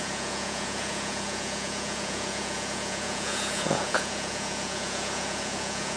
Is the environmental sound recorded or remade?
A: remade